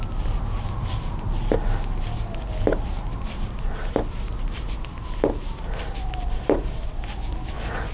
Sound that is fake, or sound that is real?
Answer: real